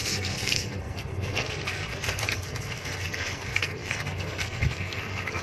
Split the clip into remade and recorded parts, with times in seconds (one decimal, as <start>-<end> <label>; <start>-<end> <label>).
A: 0.0-5.4 remade